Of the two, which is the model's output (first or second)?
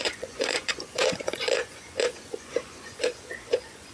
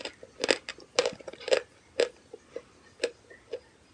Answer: first